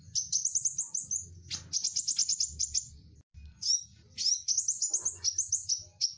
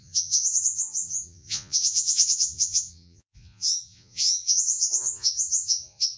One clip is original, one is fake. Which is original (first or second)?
first